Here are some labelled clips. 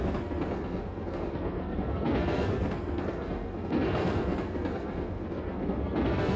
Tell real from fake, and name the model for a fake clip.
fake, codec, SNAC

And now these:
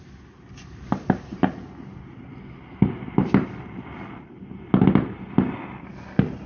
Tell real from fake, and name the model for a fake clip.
real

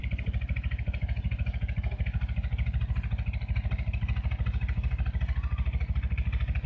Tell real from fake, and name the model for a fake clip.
real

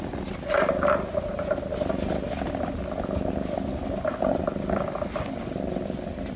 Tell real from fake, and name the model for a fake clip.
real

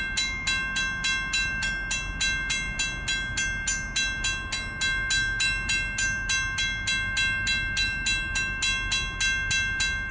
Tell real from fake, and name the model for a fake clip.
real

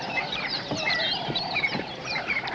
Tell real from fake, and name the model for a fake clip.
fake, vocoder, BigVGAN v2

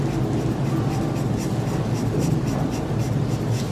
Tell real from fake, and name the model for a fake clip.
real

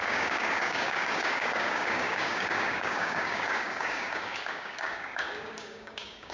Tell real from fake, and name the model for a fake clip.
fake, codec, DAC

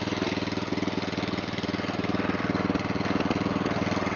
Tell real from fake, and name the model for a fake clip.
real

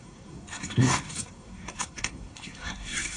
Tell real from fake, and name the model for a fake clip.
fake, codec, SNAC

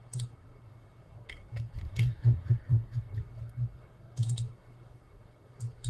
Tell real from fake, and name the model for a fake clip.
fake, codec, SNAC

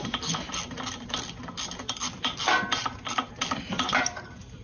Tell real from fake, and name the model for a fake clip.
real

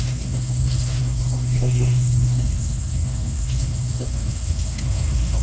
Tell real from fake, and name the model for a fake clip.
fake, codec, SNAC